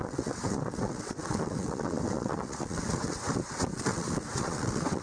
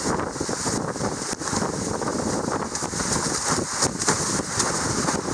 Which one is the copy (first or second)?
first